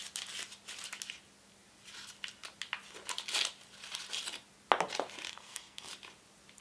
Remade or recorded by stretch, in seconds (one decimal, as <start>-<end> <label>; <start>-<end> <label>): 0.0-5.3 recorded; 5.3-5.9 remade; 5.9-6.6 recorded